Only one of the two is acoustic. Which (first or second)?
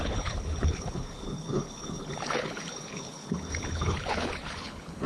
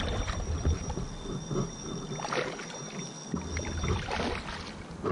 second